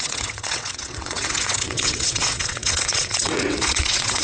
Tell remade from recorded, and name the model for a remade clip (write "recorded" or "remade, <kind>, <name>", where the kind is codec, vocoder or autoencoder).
remade, vocoder, WaveNeXt